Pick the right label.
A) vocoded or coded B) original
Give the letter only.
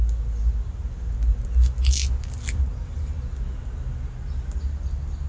B